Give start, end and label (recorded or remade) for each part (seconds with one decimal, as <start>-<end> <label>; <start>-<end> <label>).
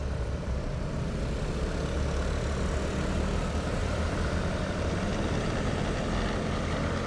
0.0-0.7 remade; 0.7-3.8 recorded; 3.8-5.8 remade; 5.8-7.1 recorded